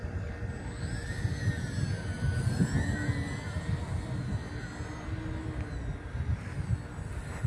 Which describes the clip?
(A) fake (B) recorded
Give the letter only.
B